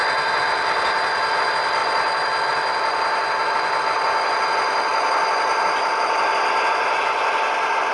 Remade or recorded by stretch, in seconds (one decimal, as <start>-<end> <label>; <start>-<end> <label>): 0.0-7.9 recorded